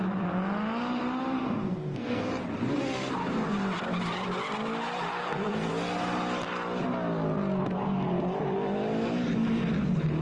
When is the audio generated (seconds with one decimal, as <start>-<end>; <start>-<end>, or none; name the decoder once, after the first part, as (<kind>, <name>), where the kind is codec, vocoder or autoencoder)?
1.4-2.3 (codec, SNAC); 5.2-5.7